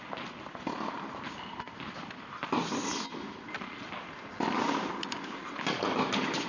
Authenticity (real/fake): real